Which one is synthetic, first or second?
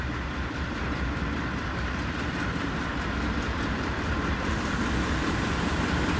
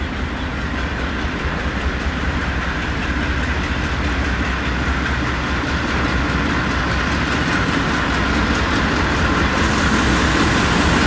first